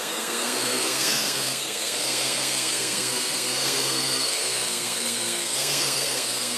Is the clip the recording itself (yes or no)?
no